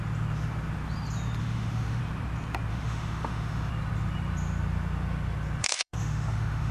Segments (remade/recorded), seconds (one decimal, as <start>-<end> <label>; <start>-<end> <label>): 0.0-1.4 recorded; 1.4-2.0 remade; 2.0-2.7 recorded; 2.7-3.7 remade; 3.7-5.6 recorded; 5.6-6.7 remade